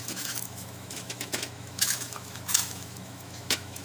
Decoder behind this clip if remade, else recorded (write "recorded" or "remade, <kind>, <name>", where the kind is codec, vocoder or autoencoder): remade, autoencoder, DAC-VAE